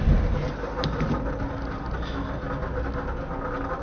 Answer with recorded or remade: recorded